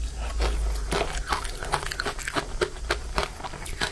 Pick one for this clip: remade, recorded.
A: recorded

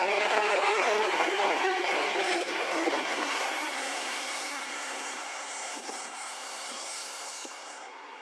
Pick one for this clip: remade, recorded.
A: remade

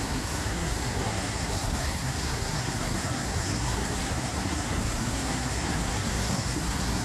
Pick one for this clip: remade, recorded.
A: remade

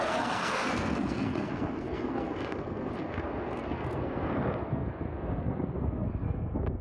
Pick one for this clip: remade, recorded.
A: remade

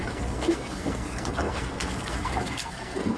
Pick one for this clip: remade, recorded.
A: remade